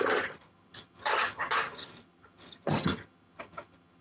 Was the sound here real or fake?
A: fake